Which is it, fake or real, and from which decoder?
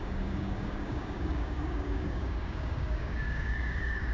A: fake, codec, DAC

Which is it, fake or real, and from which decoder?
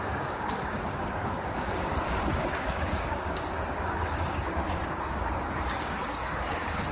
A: fake, codec, DAC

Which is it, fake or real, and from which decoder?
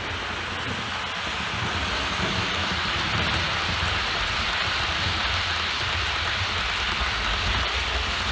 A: real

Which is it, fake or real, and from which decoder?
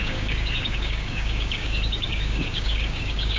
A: fake, codec, DAC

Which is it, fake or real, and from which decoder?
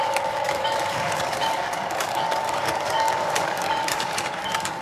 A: fake, codec, DAC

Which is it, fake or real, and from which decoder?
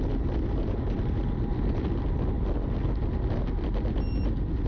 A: real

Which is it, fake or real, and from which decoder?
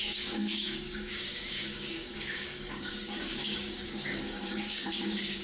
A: fake, codec, DAC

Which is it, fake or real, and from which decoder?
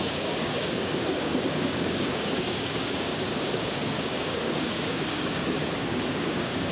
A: fake, codec, DAC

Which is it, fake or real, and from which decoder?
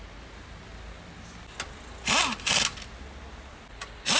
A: real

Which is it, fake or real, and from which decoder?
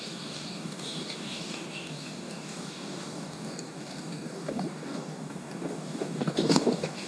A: fake, codec, DAC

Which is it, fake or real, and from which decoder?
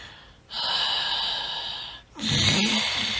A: real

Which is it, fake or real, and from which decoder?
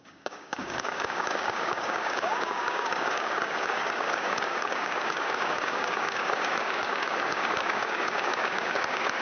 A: fake, codec, DAC